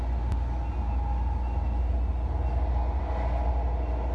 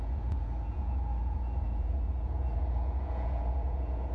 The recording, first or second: first